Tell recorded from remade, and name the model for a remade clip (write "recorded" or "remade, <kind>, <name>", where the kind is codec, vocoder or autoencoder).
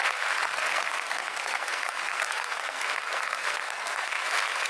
remade, codec, SNAC